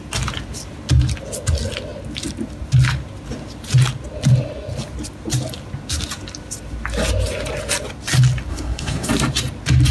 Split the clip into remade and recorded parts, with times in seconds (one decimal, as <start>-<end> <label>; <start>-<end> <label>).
0.0-8.5 recorded; 8.5-9.1 remade; 9.1-9.9 recorded

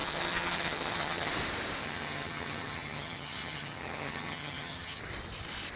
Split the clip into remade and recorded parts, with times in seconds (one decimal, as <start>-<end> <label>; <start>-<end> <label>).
0.0-1.3 remade; 1.3-1.8 recorded; 1.8-5.0 remade; 5.0-5.8 recorded

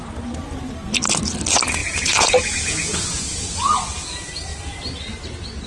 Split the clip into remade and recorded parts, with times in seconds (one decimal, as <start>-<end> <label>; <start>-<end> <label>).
0.0-1.8 recorded; 1.8-3.6 remade; 3.6-5.7 recorded

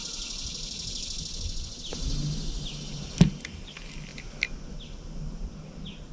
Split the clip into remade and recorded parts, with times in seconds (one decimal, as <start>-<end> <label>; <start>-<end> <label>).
0.0-6.1 recorded

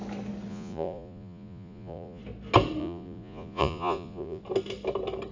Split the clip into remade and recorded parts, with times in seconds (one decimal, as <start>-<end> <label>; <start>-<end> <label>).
0.0-0.5 recorded; 0.5-2.2 remade; 2.2-2.8 recorded; 2.8-4.4 remade; 4.4-5.3 recorded

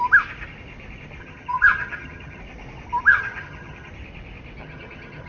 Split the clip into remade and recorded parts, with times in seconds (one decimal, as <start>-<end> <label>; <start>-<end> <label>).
0.0-1.2 recorded; 1.2-2.4 remade; 2.4-3.1 recorded; 3.1-3.9 remade; 3.9-4.6 recorded; 4.6-5.3 remade